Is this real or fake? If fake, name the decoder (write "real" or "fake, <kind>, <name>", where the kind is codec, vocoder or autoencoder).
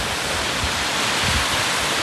real